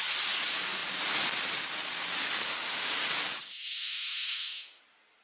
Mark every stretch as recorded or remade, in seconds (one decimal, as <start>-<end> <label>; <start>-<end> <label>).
0.0-2.4 recorded; 2.4-2.9 remade; 2.9-3.5 recorded; 3.5-4.8 remade; 4.8-5.2 recorded